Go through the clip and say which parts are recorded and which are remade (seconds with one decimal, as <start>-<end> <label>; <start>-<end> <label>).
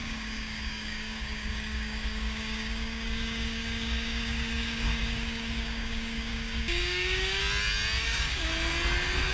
0.0-7.4 remade; 7.4-8.0 recorded; 8.0-8.5 remade; 8.5-9.3 recorded